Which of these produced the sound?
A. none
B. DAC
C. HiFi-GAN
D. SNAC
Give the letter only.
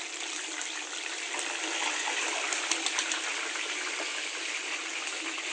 A